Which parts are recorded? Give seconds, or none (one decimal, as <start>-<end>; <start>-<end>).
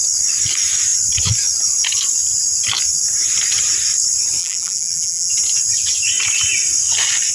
0.0-4.4; 5.3-7.3